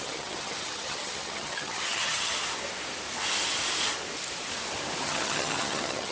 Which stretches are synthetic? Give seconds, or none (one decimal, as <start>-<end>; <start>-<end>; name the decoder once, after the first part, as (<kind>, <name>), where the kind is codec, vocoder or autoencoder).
0.0-2.3 (vocoder, HiFi-GAN); 5.0-6.1